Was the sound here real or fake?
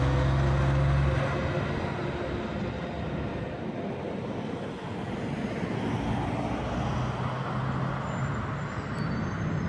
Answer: real